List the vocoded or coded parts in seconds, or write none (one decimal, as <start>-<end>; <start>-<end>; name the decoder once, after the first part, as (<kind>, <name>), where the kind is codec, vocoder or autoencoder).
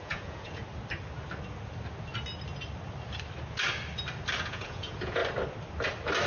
0.0-0.6 (vocoder, Vocos); 4.4-5.2